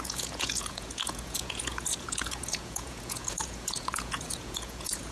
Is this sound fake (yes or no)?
yes